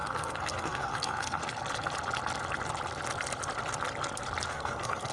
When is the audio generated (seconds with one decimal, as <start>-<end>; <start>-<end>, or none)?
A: 0.0-1.4; 4.5-5.1